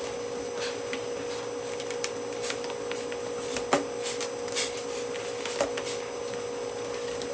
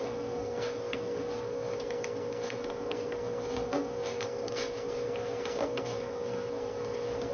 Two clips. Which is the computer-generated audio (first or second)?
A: second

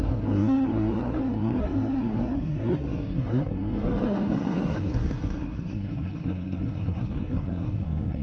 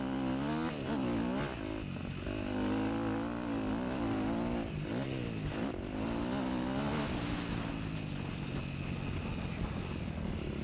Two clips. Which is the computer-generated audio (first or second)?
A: first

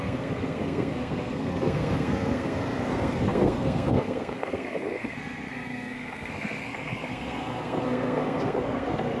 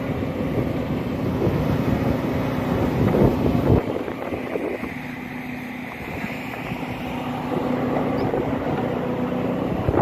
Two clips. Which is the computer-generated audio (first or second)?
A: first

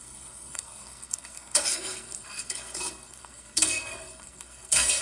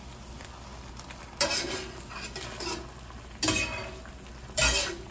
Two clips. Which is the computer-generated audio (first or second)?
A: first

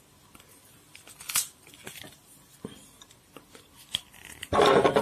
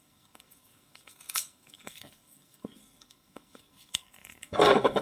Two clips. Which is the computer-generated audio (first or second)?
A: second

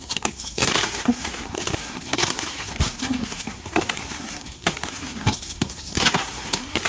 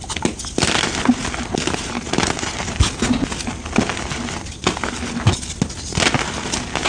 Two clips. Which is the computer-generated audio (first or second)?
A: first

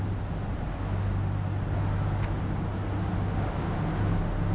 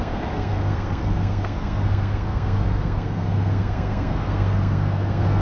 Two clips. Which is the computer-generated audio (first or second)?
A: second